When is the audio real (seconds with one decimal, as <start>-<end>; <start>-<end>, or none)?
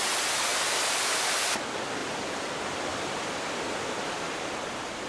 0.0-0.5; 1.4-2.0; 2.5-2.9; 4.2-5.1